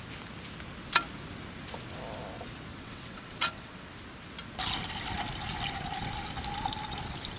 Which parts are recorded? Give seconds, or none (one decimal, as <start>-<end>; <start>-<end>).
0.0-2.7; 3.8-7.4